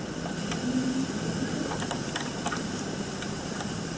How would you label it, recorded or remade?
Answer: recorded